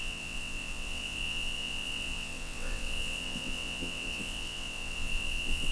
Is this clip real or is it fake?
fake